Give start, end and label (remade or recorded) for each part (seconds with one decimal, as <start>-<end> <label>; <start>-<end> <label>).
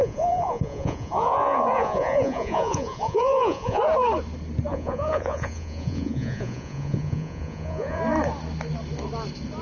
0.0-3.8 remade; 3.8-4.7 recorded; 4.7-8.0 remade; 8.0-9.6 recorded